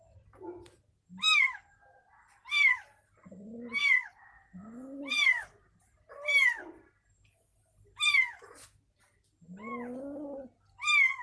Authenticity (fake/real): real